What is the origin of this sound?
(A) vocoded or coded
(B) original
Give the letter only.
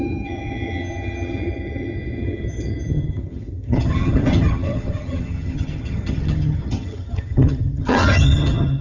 A